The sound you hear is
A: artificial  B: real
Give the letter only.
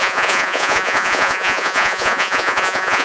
A